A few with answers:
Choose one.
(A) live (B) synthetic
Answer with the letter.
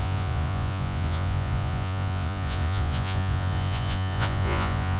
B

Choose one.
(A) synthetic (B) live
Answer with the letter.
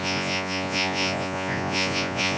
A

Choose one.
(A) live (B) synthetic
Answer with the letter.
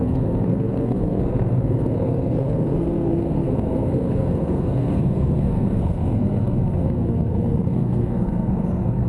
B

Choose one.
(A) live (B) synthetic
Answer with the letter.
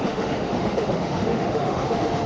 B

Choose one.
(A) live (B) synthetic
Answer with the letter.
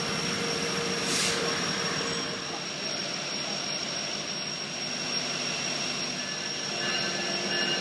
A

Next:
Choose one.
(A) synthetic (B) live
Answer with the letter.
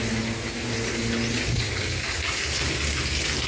B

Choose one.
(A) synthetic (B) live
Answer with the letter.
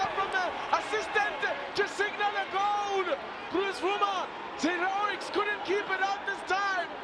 B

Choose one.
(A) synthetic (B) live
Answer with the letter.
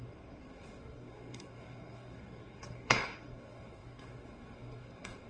A